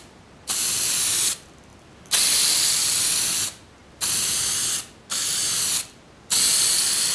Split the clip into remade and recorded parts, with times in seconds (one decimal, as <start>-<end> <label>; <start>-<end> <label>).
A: 0.0-7.1 recorded